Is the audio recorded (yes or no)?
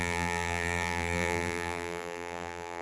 no